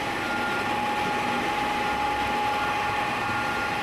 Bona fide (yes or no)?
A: yes